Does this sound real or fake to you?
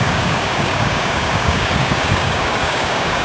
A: fake